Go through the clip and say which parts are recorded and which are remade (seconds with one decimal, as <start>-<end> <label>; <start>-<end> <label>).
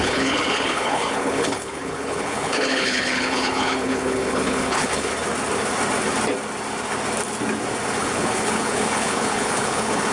0.0-5.1 remade; 5.1-8.0 recorded; 8.0-10.1 remade